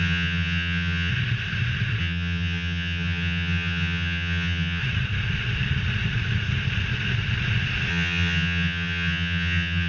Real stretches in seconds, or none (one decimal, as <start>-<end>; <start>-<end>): 1.1-2.0; 4.8-7.9